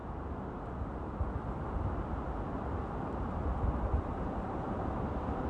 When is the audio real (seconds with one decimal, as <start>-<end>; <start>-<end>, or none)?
0.0-2.9